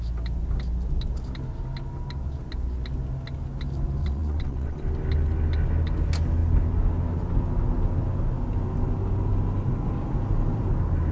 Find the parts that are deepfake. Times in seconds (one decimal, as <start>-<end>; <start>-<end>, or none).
4.0-4.8

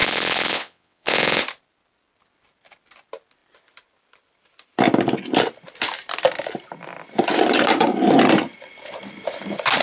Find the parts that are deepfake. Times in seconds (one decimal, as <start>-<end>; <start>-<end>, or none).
0.0-1.4

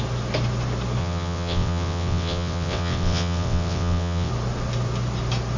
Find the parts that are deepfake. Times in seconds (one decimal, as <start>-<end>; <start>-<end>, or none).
1.0-4.3

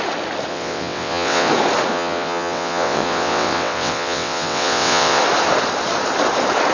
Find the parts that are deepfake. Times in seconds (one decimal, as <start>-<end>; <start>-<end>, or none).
0.5-1.5; 1.9-5.2

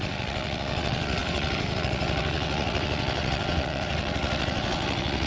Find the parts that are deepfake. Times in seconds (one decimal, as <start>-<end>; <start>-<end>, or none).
0.0-5.3

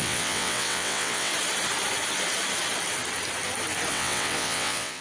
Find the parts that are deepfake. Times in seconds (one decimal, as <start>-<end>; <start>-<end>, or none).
0.0-1.3; 3.9-5.0